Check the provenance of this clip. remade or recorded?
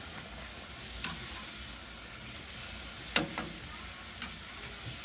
recorded